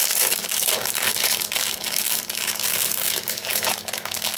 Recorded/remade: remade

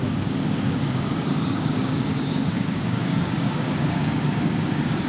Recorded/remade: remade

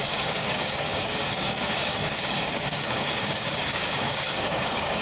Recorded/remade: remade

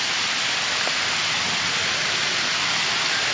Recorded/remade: recorded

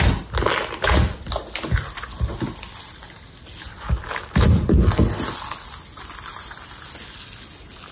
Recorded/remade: recorded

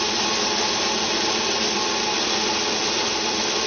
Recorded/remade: recorded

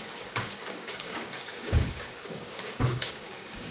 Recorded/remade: remade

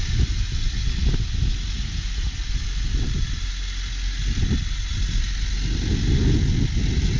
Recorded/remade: recorded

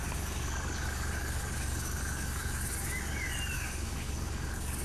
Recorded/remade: remade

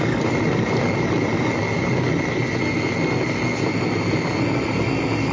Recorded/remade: recorded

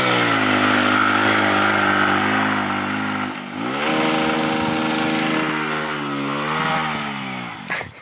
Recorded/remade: recorded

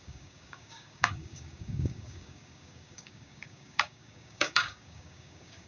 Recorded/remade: remade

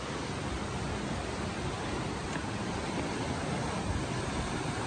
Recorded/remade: recorded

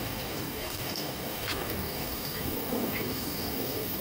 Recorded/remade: remade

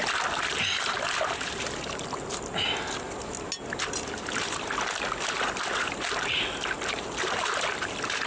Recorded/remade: recorded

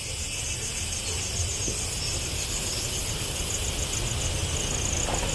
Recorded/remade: recorded